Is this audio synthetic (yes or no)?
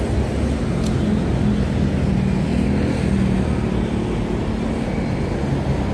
no